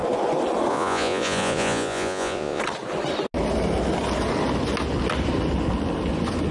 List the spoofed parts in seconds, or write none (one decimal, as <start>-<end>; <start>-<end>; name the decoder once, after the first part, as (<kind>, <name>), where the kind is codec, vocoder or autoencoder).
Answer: 0.7-2.6 (vocoder, Vocos)